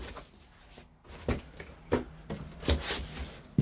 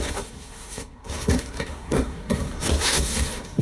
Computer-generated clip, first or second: second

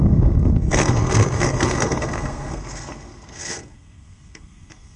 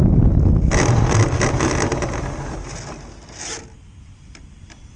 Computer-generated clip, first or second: first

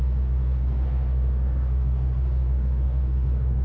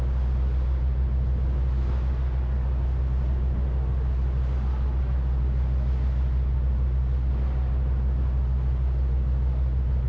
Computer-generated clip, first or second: first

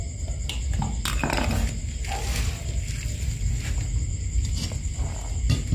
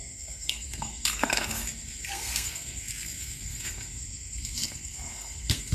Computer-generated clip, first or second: second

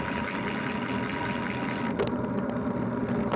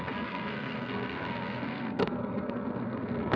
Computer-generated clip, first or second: second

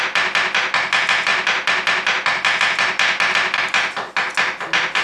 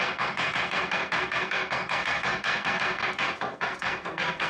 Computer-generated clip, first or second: second